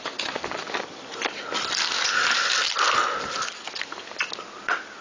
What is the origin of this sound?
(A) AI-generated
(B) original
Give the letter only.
B